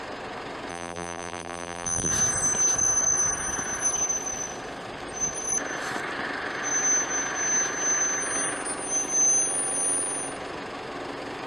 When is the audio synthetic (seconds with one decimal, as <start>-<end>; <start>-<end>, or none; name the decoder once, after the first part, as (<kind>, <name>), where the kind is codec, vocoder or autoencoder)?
0.7-2.1 (vocoder, BigVGAN v2)